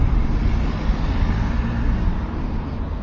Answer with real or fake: real